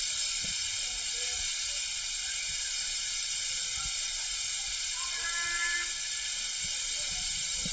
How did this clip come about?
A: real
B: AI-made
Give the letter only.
B